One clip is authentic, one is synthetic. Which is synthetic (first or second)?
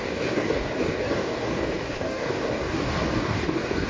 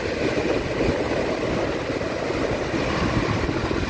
first